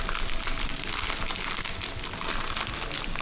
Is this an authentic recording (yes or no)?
yes